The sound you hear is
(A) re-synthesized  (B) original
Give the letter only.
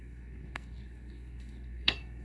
A